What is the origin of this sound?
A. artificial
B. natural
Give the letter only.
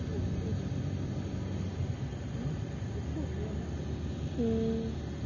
B